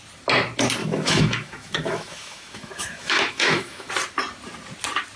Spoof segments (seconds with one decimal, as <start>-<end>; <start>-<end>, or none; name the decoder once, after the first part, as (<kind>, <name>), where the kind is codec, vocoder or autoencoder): 0.8-3.9 (autoencoder, DAC-VAE)